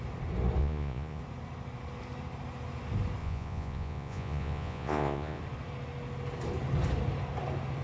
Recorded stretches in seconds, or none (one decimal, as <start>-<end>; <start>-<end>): 0.0-0.6; 1.2-3.2; 5.4-7.8